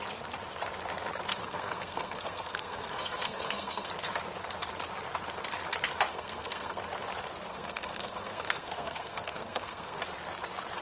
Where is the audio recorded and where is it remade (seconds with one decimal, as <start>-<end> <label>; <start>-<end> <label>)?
0.0-1.3 recorded; 1.3-3.9 remade; 3.9-6.1 recorded; 6.1-6.8 remade; 6.8-7.5 recorded; 7.5-10.0 remade; 10.0-10.8 recorded